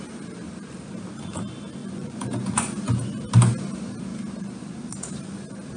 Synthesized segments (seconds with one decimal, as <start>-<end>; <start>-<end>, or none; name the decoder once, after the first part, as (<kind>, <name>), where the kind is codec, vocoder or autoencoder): 1.8-2.8 (vocoder, Vocos)